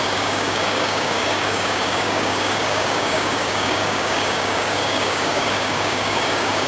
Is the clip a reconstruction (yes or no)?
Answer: yes